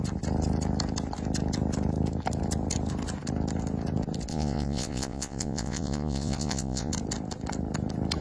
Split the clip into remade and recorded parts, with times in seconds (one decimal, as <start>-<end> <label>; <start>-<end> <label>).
0.0-4.3 recorded; 4.3-6.9 remade; 6.9-8.2 recorded